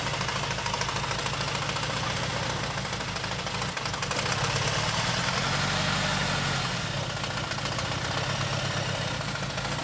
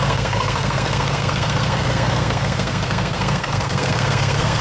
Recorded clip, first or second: first